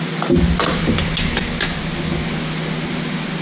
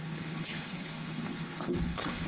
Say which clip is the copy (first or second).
second